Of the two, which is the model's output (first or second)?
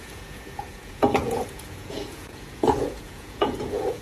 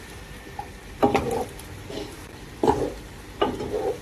first